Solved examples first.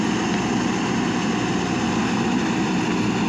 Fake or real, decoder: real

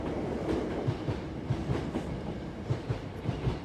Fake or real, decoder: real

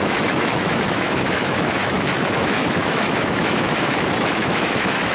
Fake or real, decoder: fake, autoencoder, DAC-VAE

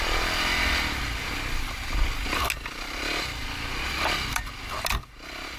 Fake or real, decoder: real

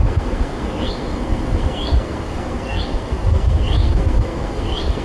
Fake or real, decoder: fake, codec, SNAC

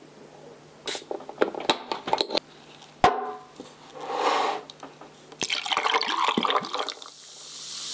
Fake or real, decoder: real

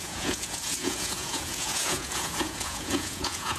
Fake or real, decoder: fake, vocoder, Vocos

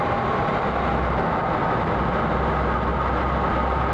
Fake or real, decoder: real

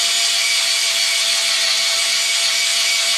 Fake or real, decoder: real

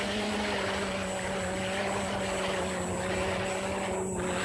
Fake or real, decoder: real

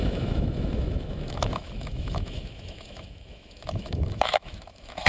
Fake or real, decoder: fake, autoencoder, DAC-VAE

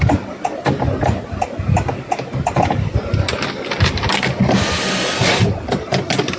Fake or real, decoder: real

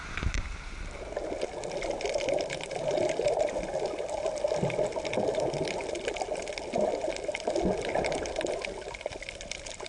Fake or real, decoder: real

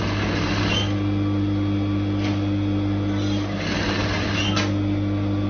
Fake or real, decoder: real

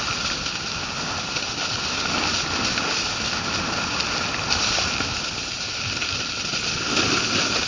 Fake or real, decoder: real